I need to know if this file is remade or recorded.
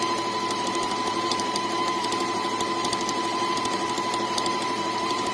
remade